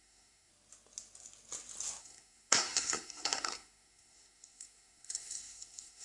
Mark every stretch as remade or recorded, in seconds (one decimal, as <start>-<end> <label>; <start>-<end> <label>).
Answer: 0.0-0.5 remade; 0.5-2.0 recorded; 2.0-6.0 remade